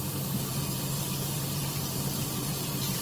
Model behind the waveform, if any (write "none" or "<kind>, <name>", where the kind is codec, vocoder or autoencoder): vocoder, BigVGAN v2